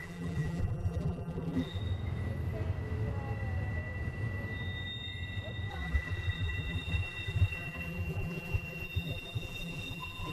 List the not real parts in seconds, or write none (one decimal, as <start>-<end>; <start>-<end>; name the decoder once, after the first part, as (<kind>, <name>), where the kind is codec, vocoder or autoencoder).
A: 0.0-1.8 (vocoder, BigVGAN v2); 5.7-10.3